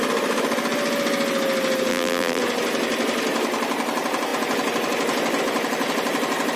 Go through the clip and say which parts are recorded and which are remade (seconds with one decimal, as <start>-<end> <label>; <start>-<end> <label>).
0.0-1.9 recorded; 1.9-2.4 remade; 2.4-6.6 recorded